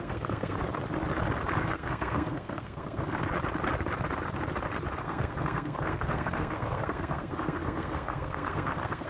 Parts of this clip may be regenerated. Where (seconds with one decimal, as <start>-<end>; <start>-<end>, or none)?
0.0-0.6; 1.6-3.2; 5.0-9.1